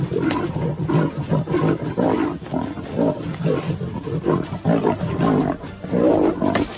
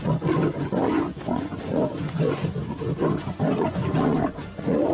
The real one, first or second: first